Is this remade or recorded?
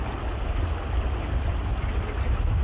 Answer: recorded